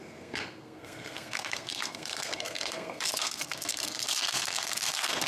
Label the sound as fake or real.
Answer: fake